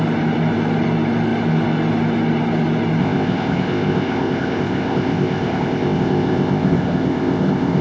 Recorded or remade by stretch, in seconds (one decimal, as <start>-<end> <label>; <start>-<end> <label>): 0.0-3.0 recorded; 3.0-7.8 remade